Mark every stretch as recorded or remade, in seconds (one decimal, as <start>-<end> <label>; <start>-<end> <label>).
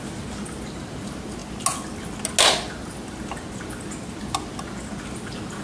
0.0-5.6 recorded